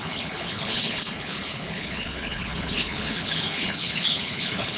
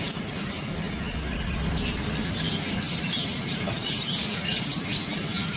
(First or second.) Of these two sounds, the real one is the second